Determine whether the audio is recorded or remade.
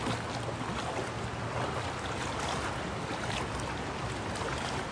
recorded